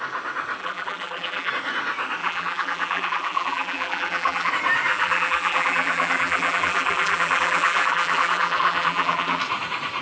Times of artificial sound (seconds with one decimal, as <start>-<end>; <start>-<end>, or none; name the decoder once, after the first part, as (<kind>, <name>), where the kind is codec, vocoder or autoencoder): 0.6-1.5 (vocoder, BigVGAN v2); 2.2-4.5; 4.9-9.4